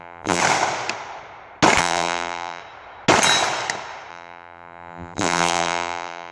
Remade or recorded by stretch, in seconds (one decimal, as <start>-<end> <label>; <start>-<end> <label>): 0.0-0.4 remade; 0.4-1.8 recorded; 1.8-2.6 remade; 2.6-4.1 recorded; 4.1-6.3 remade